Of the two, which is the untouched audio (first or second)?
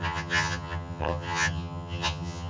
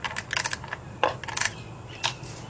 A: second